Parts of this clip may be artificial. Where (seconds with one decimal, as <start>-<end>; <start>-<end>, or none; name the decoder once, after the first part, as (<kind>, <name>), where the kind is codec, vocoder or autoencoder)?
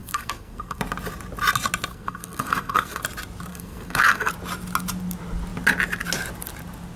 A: 0.0-0.8 (codec, SNAC); 1.9-3.0; 3.5-4.3